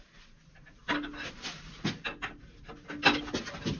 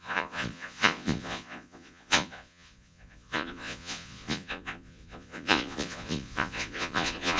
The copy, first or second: second